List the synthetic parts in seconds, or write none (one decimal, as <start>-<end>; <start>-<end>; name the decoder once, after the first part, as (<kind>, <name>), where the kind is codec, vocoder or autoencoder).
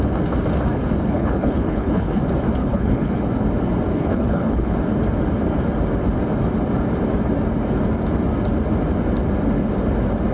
1.1-2.2 (codec, HILCodec); 2.6-3.2; 3.9-4.7